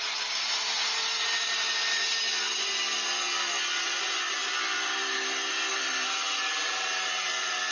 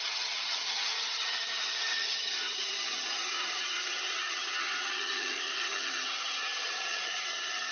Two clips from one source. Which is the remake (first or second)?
second